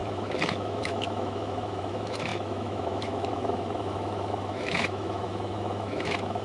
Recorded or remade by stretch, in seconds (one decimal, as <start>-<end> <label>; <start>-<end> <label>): 0.0-6.4 remade